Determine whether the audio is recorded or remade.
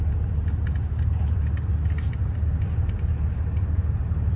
recorded